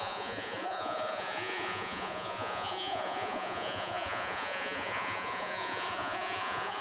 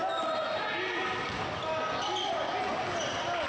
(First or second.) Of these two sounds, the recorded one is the second